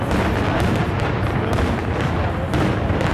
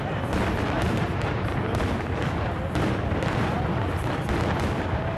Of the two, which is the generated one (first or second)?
second